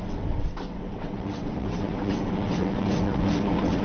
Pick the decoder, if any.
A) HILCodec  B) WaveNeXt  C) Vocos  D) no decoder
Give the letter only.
B